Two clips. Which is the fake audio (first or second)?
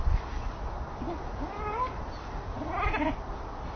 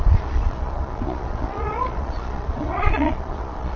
second